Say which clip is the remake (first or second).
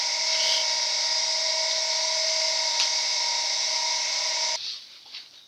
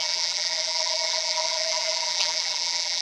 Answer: second